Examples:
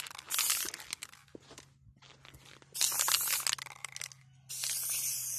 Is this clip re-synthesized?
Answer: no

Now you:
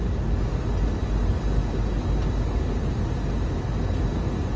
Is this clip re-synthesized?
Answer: no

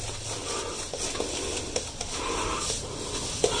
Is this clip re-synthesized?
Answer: no